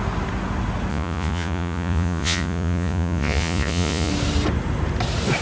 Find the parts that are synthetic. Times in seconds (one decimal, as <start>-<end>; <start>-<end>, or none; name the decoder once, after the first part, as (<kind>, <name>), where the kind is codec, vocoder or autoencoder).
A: 0.9-4.1 (vocoder, Vocos)